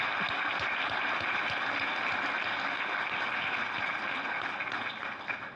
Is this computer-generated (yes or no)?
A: no